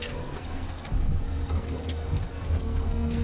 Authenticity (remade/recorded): remade